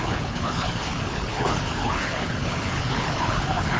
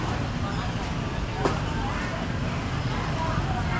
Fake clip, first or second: first